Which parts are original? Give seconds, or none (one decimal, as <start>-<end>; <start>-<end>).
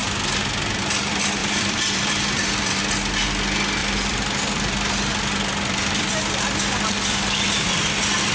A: 0.0-1.4; 2.8-3.8; 6.1-8.3